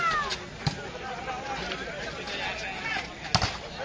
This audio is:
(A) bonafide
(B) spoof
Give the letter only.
A